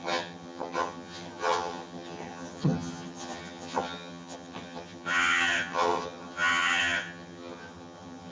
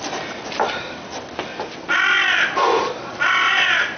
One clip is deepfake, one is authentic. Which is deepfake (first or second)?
first